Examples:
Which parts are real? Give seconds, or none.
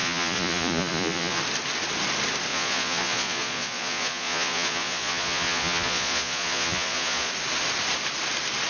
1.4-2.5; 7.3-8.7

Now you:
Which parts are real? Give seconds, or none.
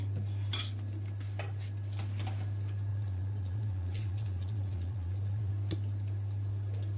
0.0-2.9; 5.5-7.0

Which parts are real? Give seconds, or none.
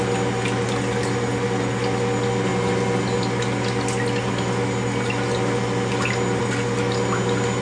0.0-7.6